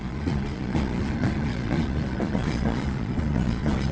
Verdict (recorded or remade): remade